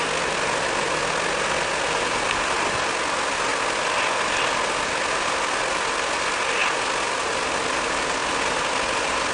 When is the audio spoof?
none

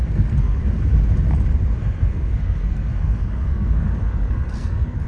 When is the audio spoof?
0.0-0.6 (codec, SNAC); 1.8-5.1

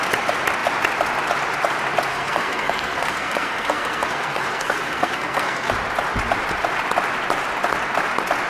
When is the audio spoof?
2.1-5.7 (codec, SNAC)

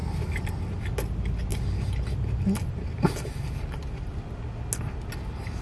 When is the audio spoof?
0.0-0.5 (vocoder, BigVGAN v2); 1.5-4.4

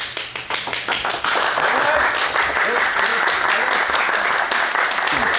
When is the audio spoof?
none

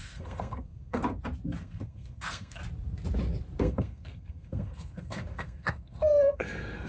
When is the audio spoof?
0.0-1.0 (codec, SNAC); 1.6-2.6; 3.6-6.9

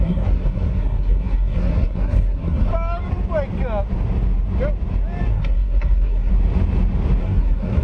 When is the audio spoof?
0.0-2.7 (codec, SNAC); 5.3-6.3; 7.2-7.8